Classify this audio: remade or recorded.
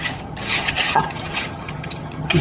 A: remade